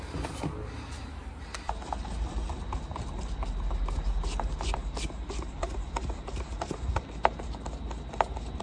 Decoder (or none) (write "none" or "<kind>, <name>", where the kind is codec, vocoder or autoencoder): none